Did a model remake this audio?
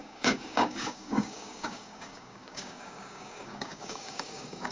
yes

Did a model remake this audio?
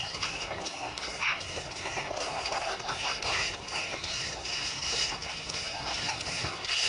yes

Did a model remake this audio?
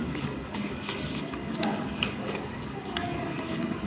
yes